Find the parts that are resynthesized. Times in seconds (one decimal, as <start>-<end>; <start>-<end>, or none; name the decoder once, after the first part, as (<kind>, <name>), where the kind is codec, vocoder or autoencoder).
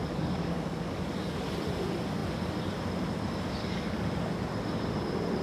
0.0-1.5 (codec, DAC); 3.6-4.5